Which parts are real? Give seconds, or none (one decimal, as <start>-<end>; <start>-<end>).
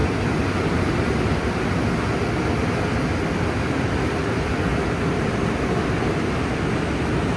0.0-4.7; 5.5-7.4